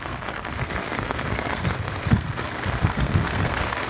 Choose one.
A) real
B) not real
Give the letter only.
B